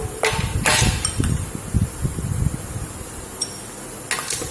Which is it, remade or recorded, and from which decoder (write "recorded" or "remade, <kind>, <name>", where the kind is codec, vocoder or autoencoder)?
recorded